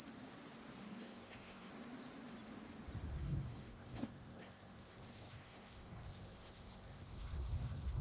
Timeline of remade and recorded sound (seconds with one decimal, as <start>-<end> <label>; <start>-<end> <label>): 0.0-0.9 recorded; 0.9-1.7 remade; 1.7-3.1 recorded; 3.1-8.0 remade